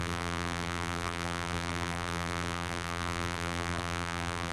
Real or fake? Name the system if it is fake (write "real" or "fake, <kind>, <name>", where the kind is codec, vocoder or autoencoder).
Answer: fake, vocoder, BigVGAN v2